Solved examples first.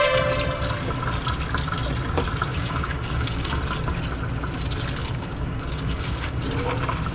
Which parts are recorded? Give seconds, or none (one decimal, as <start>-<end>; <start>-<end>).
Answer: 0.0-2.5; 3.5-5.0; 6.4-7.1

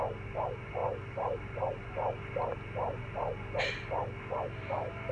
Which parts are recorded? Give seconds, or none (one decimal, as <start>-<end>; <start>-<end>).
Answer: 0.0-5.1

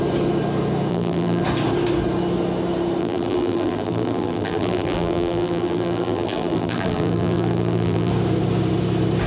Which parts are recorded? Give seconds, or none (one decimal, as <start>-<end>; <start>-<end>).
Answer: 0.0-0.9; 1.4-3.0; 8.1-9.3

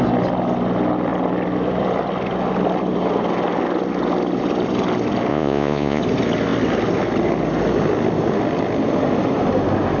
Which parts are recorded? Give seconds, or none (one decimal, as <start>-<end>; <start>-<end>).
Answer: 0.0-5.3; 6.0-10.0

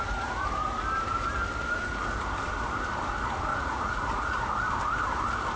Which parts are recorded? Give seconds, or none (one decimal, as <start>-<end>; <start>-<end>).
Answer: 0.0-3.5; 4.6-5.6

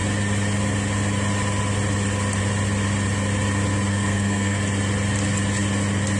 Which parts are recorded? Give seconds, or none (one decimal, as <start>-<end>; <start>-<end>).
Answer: 0.0-3.9; 4.6-6.2

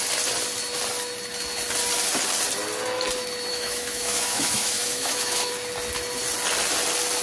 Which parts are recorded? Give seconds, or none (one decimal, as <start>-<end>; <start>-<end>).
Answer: 0.0-3.5; 5.5-7.2